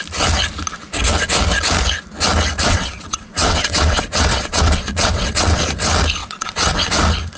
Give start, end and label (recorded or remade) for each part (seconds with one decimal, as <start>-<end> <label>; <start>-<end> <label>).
0.0-2.7 recorded; 2.7-5.6 remade; 5.6-6.2 recorded; 6.2-6.9 remade; 6.9-7.4 recorded